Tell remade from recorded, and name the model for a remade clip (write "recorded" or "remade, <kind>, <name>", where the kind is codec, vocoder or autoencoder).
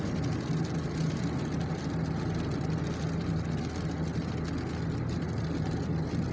recorded